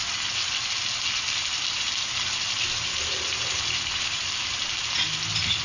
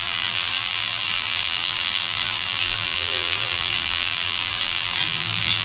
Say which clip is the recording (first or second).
first